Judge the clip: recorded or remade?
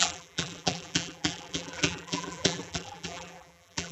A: remade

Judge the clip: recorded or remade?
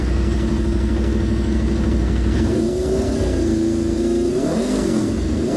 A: remade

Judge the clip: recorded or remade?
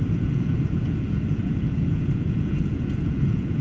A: remade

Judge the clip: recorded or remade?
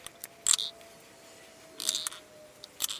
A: recorded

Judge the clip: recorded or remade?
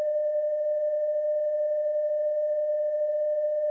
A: remade